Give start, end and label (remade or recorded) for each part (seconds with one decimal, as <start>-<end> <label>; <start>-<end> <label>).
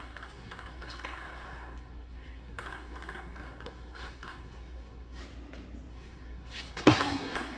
0.0-5.2 remade; 5.2-5.9 recorded; 5.9-7.6 remade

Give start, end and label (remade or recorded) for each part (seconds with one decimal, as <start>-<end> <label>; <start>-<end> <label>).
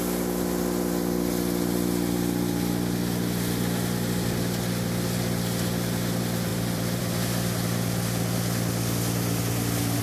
0.0-6.5 recorded; 6.5-7.0 remade; 7.0-10.0 recorded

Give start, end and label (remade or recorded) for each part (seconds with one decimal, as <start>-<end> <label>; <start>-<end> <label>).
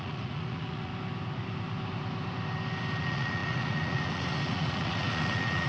0.0-0.9 remade; 0.9-3.0 recorded; 3.0-5.7 remade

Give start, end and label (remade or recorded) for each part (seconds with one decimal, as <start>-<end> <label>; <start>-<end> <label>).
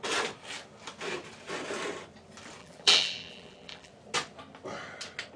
0.0-2.6 recorded; 2.6-3.9 remade; 3.9-5.4 recorded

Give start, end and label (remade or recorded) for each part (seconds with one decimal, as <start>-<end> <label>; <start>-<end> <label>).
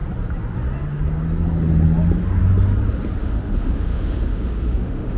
0.0-3.2 recorded; 3.2-5.2 remade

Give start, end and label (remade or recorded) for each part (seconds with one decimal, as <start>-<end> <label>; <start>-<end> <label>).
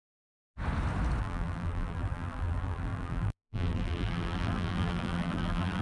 0.0-1.2 recorded; 1.2-5.8 remade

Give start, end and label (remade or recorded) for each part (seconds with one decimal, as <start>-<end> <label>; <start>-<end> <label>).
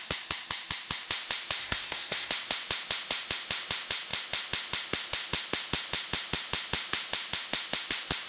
0.0-1.6 recorded; 1.6-2.3 remade; 2.3-8.3 recorded